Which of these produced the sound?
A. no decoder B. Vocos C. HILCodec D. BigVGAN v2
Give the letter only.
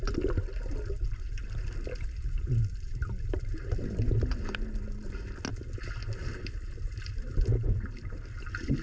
A